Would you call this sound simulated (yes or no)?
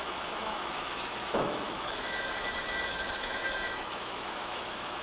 yes